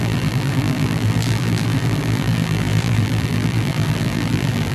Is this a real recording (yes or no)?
no